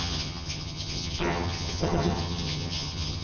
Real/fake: fake